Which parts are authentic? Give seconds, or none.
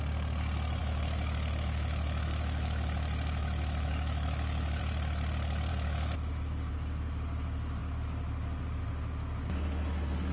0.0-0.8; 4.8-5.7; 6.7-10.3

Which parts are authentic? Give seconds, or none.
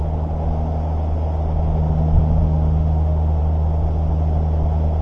0.0-2.4; 3.4-5.0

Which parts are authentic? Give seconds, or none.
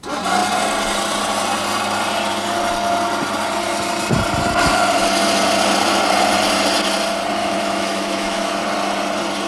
0.0-7.4; 8.6-9.5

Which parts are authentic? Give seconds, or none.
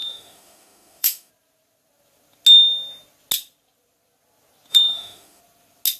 1.3-4.7; 5.4-6.0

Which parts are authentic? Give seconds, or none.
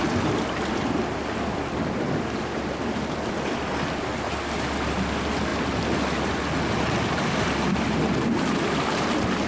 0.0-9.5